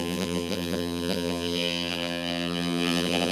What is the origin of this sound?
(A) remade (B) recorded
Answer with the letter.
A